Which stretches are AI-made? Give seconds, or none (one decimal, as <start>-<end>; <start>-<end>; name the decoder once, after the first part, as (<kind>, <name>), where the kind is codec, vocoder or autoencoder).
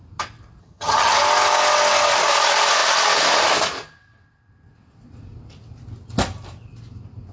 0.6-1.1 (vocoder, HiFi-GAN)